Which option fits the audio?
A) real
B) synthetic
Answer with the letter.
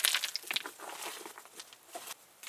A